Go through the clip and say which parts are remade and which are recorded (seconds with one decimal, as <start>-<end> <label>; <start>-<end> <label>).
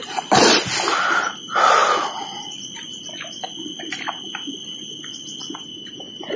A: 0.0-6.4 recorded